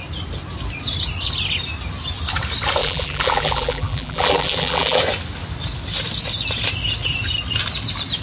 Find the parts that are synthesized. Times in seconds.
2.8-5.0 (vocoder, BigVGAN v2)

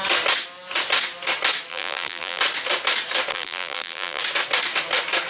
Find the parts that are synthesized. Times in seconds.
1.7-2.4 (vocoder, BigVGAN v2); 3.3-4.2